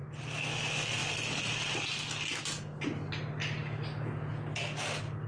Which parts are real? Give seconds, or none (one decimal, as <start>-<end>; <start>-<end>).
0.0-5.3